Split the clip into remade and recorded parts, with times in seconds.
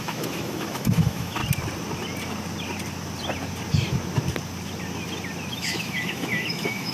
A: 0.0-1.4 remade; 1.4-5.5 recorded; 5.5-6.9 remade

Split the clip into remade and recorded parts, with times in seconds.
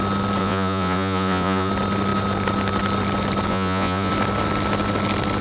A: 0.0-0.4 recorded; 0.4-1.7 remade; 1.7-3.5 recorded; 3.5-4.1 remade; 4.1-5.4 recorded